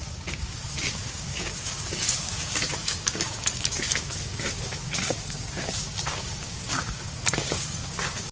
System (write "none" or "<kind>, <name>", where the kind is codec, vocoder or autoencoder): codec, DAC